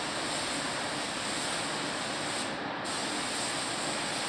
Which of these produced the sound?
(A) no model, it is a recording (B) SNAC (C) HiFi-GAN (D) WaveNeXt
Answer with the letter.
A